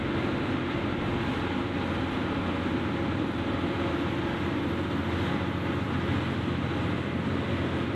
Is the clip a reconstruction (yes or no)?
no